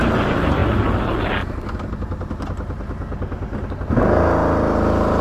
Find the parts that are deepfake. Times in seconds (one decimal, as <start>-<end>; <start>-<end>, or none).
none